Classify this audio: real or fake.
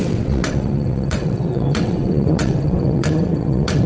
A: fake